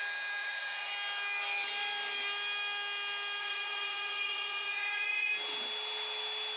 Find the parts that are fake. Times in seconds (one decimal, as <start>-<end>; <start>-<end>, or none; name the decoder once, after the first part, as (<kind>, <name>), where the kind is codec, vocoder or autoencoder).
0.4-0.9 (vocoder, Vocos); 3.4-5.3